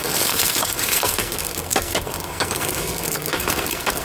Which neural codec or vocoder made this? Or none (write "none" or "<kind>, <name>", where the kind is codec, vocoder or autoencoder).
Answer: codec, SNAC